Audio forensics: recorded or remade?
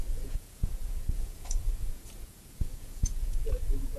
remade